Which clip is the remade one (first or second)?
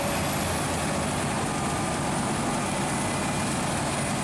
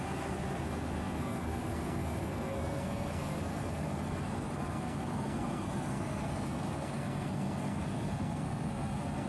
second